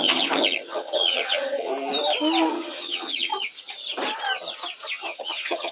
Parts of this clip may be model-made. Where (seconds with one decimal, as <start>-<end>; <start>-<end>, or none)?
0.0-1.7; 2.5-3.3; 4.9-5.7